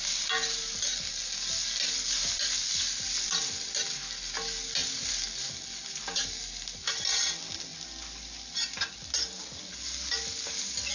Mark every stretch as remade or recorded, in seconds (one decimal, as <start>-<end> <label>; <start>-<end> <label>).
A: 0.0-10.9 recorded